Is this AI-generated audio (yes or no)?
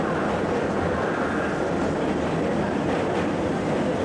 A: no